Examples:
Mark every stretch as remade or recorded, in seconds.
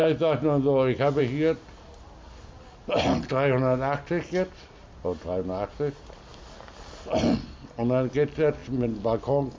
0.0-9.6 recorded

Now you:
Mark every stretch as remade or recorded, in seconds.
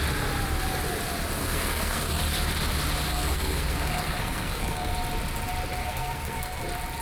0.0-1.4 recorded; 1.4-2.2 remade; 2.2-3.1 recorded; 3.1-4.9 remade; 4.9-5.8 recorded; 5.8-6.6 remade; 6.6-7.0 recorded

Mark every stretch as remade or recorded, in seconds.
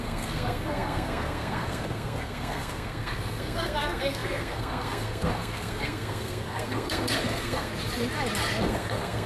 0.0-7.7 remade; 7.7-8.6 recorded; 8.6-9.3 remade